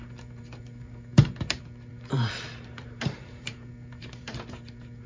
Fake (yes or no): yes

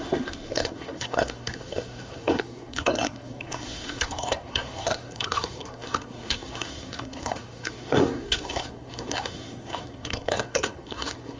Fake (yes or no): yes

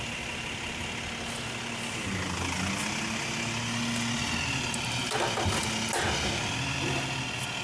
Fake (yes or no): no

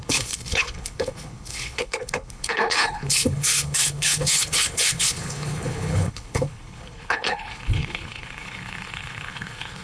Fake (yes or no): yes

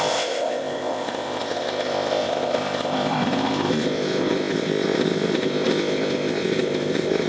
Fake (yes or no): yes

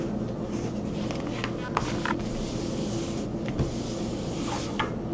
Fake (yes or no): no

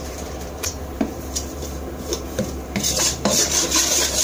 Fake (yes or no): yes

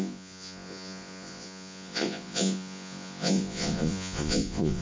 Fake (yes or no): yes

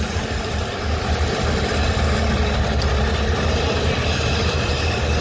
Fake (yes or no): no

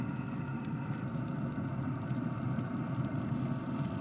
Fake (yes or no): no